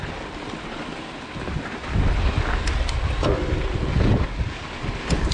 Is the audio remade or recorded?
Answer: recorded